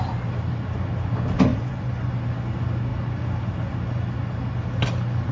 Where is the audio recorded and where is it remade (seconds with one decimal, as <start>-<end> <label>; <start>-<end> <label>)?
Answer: 0.0-1.5 recorded; 1.5-2.1 remade; 2.1-5.3 recorded